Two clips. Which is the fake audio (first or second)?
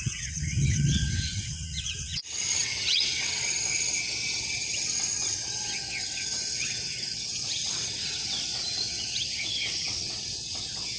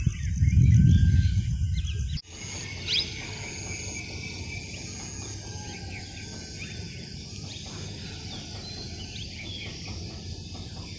first